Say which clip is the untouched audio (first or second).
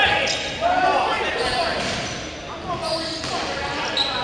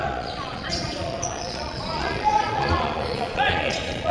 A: first